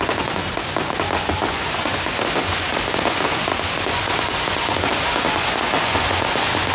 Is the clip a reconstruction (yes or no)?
yes